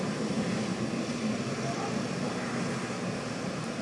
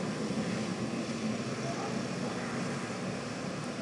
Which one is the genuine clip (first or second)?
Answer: second